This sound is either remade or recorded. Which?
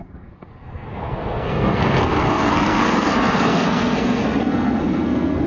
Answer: remade